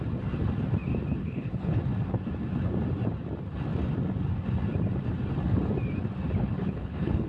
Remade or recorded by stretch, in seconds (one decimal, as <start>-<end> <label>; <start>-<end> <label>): 0.0-1.2 recorded; 1.2-1.8 remade; 1.8-6.4 recorded; 6.4-7.3 remade